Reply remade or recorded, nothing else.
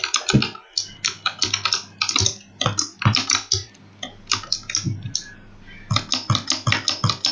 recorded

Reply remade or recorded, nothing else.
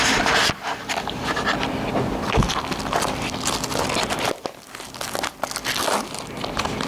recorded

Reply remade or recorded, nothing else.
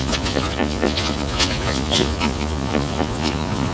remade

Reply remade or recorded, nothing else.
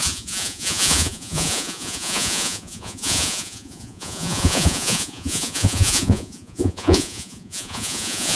remade